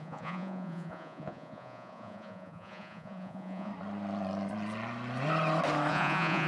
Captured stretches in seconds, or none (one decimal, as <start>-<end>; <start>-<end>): 3.7-5.9